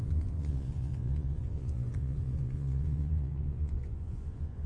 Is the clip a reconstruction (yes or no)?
yes